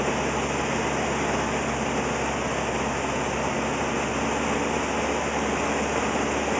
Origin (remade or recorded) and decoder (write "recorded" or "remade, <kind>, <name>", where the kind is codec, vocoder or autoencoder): recorded